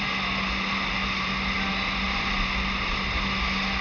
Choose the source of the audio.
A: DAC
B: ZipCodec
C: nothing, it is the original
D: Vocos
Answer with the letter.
C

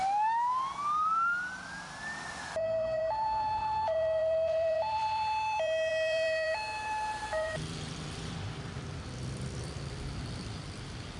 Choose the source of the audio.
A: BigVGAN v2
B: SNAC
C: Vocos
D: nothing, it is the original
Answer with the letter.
A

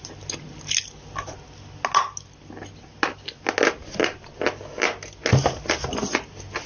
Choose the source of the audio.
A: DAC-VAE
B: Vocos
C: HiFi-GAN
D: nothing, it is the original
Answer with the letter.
D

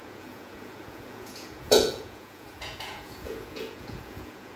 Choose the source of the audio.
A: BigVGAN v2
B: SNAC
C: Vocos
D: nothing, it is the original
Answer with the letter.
C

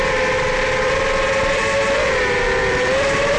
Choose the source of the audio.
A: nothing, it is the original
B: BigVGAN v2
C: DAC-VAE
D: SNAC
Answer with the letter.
B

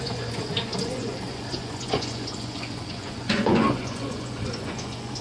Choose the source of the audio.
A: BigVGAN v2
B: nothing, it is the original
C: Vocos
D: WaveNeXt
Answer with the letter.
C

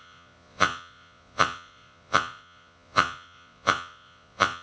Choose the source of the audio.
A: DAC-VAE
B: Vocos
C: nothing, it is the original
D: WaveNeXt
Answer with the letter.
B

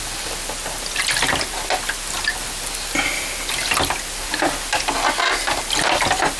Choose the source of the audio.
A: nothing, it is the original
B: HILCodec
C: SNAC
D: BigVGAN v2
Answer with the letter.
A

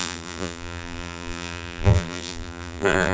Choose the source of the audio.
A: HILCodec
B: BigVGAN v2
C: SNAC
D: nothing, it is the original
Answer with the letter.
B